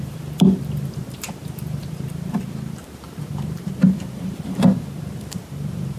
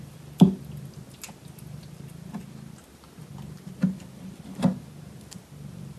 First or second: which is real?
second